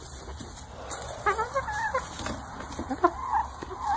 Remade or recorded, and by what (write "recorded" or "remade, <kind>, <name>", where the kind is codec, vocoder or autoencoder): recorded